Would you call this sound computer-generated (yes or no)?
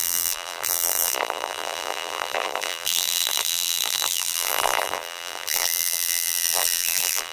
yes